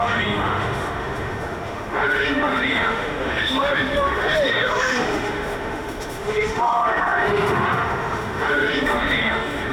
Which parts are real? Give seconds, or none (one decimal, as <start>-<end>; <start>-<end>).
none